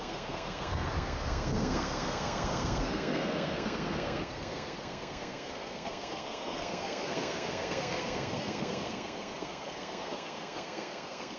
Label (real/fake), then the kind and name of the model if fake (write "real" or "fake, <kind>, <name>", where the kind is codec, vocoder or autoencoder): fake, codec, SNAC